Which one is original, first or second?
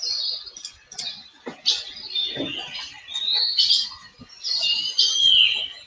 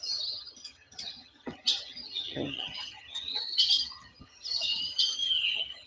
first